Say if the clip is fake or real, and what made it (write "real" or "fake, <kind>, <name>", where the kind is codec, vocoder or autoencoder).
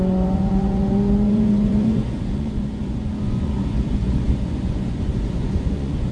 fake, vocoder, Vocos